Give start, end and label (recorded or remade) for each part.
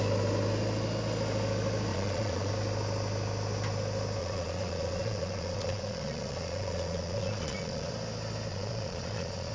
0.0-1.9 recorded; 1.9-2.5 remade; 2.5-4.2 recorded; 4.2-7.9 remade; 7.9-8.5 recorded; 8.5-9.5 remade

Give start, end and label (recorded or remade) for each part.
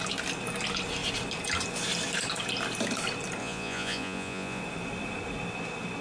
0.0-3.4 recorded; 3.4-4.6 remade; 4.6-6.0 recorded